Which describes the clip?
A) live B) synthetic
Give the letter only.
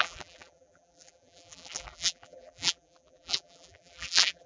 B